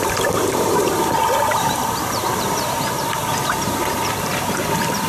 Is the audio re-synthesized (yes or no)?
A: yes